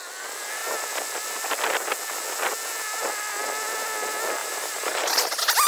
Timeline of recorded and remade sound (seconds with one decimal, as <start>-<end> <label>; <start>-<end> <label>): 0.0-4.4 recorded; 4.4-5.1 remade; 5.1-5.7 recorded